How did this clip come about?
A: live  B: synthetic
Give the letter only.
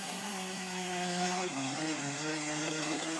B